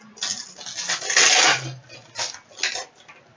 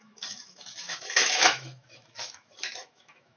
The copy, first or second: second